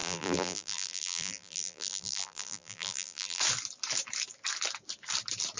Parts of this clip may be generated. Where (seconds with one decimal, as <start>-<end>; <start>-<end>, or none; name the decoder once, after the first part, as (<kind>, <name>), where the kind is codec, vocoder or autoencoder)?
0.0-3.4 (vocoder, BigVGAN v2)